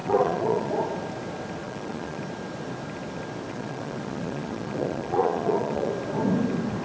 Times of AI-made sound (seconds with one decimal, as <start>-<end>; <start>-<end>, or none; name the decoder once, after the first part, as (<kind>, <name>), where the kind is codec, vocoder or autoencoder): 0.0-0.7 (vocoder, Vocos); 1.6-2.2; 3.5-5.9